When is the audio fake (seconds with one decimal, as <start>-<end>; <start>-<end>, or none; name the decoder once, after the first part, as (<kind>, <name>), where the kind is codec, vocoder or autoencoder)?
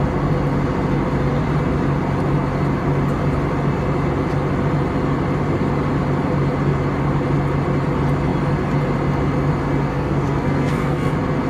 9.9-11.1 (codec, SNAC)